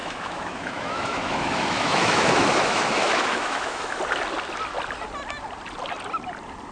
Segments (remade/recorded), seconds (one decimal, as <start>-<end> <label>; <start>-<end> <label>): 0.0-4.0 remade; 4.0-6.7 recorded